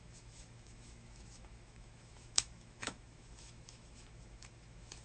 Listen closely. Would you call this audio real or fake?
fake